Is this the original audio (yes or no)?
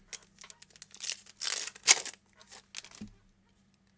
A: yes